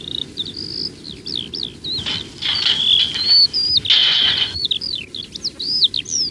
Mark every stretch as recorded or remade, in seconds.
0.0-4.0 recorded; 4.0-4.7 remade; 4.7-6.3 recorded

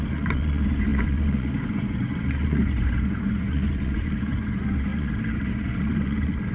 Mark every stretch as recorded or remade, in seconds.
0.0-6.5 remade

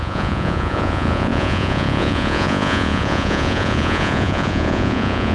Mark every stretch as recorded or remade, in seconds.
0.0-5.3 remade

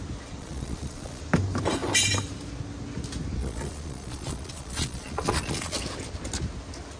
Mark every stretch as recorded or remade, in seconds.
0.0-0.4 recorded; 0.4-1.2 remade; 1.2-3.4 recorded; 3.4-5.8 remade; 5.8-7.0 recorded

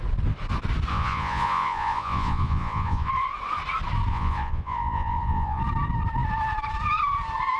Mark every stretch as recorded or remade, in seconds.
0.0-0.9 recorded; 0.9-3.1 remade; 3.1-4.1 recorded; 4.1-5.6 remade; 5.6-7.6 recorded